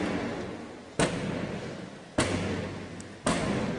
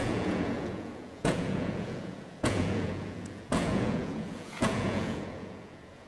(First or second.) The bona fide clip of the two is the first